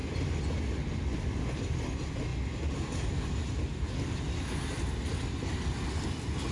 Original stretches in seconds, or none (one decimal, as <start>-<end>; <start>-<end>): 0.0-6.5